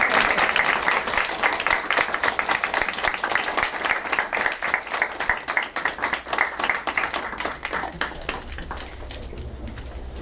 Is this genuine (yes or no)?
yes